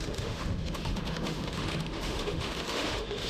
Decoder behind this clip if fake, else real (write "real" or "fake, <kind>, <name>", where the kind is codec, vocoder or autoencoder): fake, autoencoder, DAC-VAE